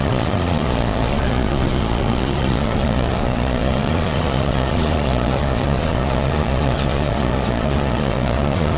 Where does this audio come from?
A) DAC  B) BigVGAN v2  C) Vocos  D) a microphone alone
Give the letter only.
C